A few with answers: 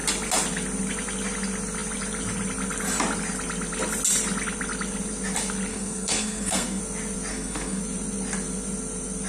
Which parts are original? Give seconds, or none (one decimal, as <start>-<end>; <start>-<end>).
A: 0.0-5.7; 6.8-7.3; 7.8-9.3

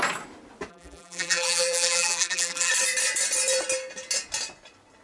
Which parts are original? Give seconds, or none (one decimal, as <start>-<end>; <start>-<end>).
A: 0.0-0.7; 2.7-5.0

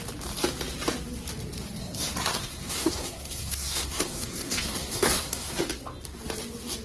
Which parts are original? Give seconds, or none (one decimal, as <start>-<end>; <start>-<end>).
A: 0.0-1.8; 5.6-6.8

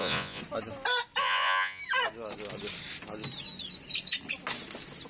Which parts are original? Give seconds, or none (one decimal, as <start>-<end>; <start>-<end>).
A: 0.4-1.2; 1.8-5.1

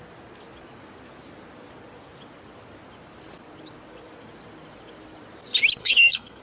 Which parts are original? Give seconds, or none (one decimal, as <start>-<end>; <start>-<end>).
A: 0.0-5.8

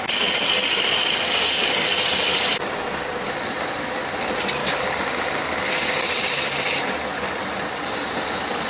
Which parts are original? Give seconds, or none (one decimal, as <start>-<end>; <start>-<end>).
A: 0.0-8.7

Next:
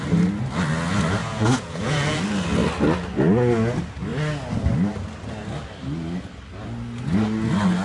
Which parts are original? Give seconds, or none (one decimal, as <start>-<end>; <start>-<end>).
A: 0.0-1.2; 2.0-7.8